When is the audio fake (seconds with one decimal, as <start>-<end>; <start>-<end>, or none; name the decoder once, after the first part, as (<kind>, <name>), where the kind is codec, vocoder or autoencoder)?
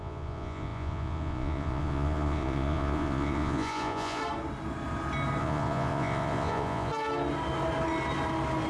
0.0-4.2 (vocoder, Vocos); 5.4-6.9